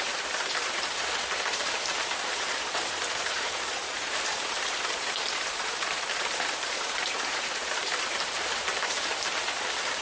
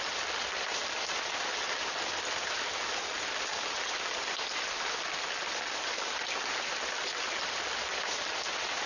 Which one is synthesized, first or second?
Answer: first